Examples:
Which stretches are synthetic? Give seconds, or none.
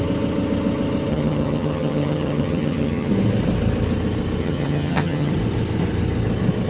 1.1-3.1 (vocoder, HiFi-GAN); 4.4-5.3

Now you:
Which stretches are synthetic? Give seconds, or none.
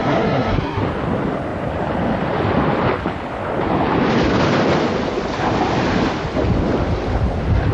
0.0-0.8 (codec, SNAC)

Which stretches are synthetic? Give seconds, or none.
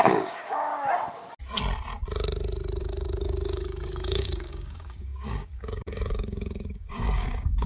0.0-0.7 (codec, DAC); 2.8-7.7